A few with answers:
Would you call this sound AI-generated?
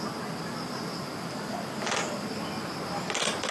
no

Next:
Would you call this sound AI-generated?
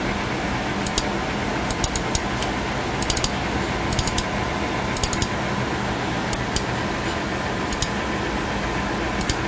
no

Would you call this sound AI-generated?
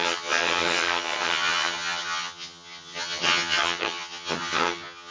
yes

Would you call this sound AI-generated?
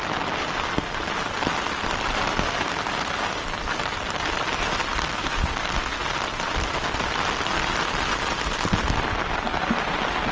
yes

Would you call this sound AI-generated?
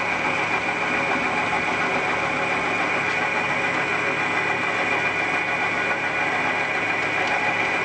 no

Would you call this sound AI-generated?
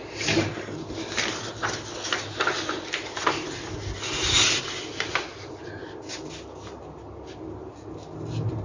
no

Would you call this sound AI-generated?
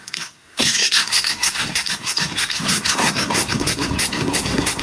yes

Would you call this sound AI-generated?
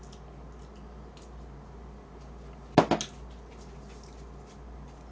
no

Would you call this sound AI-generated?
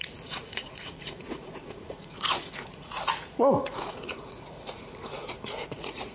yes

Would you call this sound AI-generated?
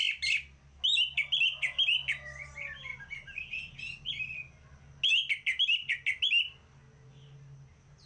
no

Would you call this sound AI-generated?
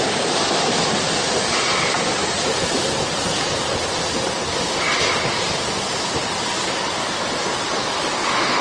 no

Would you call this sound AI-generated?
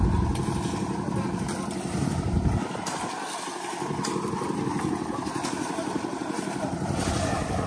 yes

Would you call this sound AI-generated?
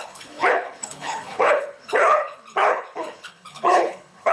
yes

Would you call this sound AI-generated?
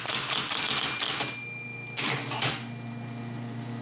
no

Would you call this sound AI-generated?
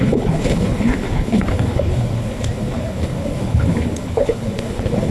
yes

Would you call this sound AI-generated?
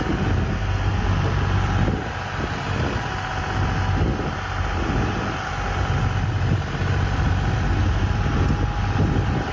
no